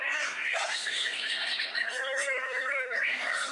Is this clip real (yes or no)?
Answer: no